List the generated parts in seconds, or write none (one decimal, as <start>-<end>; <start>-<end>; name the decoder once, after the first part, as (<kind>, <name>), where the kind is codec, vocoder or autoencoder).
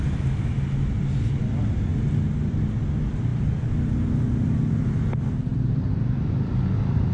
5.5-6.5 (vocoder, BigVGAN v2)